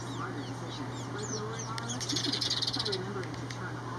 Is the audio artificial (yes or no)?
no